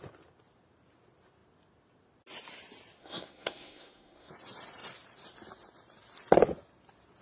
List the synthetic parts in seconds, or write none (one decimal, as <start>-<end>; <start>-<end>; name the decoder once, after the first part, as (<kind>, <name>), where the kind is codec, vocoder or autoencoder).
3.0-4.3 (codec, SNAC)